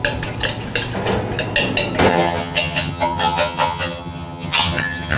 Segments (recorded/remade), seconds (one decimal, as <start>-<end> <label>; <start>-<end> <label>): 0.0-2.1 recorded; 2.1-5.2 remade

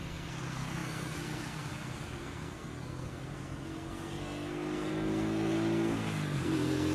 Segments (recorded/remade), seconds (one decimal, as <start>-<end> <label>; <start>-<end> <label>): 0.0-6.9 remade

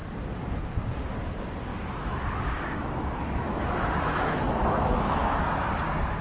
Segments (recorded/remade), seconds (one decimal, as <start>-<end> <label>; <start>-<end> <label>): 0.0-1.7 recorded; 1.7-5.4 remade; 5.4-6.2 recorded

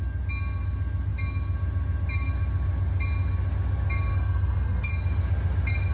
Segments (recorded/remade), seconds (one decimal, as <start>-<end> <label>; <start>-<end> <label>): 0.0-4.1 recorded; 4.1-4.9 remade; 4.9-5.9 recorded